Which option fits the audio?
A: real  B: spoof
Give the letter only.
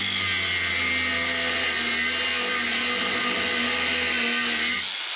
A